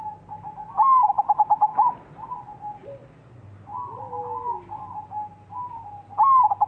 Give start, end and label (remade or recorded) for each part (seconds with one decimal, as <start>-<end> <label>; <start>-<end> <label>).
0.0-1.7 recorded; 1.7-2.3 remade; 2.3-2.8 recorded; 2.8-3.3 remade; 3.3-6.7 recorded